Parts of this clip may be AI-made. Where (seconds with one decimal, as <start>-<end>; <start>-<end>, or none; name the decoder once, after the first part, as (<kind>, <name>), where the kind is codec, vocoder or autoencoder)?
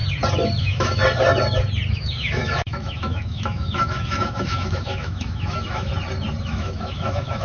0.6-1.0 (autoencoder, DAC-VAE); 1.9-5.9; 6.4-7.4